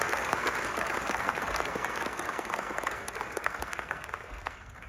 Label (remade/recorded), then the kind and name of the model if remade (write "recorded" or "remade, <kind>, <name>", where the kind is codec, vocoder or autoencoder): remade, codec, SNAC